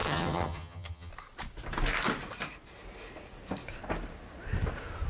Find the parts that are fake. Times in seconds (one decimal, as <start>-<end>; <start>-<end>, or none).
0.0-1.1